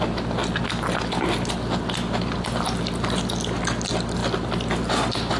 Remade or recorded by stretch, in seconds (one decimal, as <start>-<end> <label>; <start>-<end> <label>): 0.0-5.4 recorded